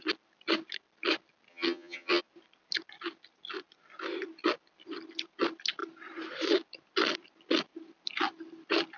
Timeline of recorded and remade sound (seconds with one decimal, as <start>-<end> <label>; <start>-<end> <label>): 0.0-1.5 recorded; 1.5-2.2 remade; 2.2-9.0 recorded